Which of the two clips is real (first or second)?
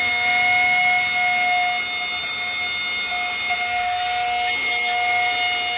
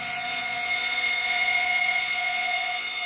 first